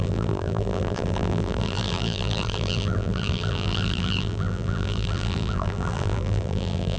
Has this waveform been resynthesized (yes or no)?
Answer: yes